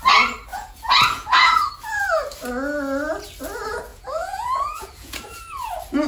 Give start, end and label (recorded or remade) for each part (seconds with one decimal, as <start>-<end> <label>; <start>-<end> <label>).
0.0-0.5 recorded; 0.5-1.7 remade; 1.7-3.9 recorded; 3.9-5.5 remade; 5.5-6.1 recorded